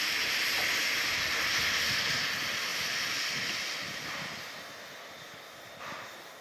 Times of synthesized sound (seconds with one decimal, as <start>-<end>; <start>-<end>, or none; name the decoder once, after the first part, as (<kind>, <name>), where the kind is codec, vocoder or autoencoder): none